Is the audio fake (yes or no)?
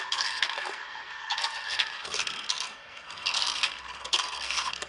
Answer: yes